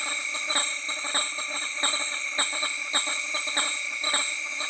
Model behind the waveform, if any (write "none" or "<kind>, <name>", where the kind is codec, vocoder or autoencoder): none